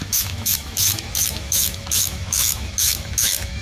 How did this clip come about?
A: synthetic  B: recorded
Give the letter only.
A